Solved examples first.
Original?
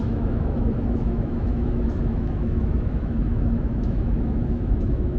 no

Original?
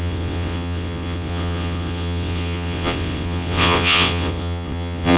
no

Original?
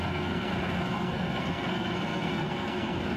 no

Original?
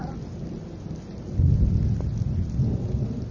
yes